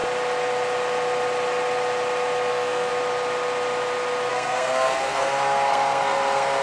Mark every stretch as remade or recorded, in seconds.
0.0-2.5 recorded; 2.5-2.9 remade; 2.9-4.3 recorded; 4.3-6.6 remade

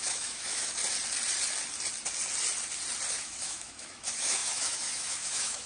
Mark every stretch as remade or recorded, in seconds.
0.0-0.8 remade; 0.8-3.1 recorded; 3.1-5.7 remade

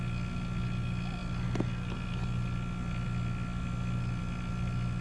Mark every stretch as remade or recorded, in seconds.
0.0-5.0 recorded